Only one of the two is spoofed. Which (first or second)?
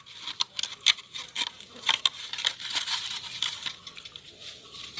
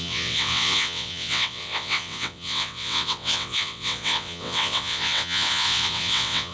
second